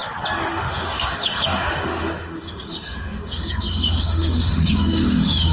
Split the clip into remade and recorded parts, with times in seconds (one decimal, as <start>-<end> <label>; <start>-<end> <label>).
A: 0.0-0.5 recorded; 0.5-5.5 remade